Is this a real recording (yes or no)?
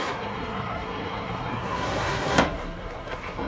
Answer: no